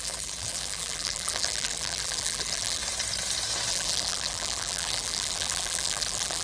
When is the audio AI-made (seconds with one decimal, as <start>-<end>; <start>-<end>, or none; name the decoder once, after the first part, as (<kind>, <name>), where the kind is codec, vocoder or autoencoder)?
0.0-2.8 (vocoder, BigVGAN v2); 3.7-6.4